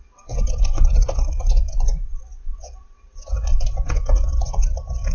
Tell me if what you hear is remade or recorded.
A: remade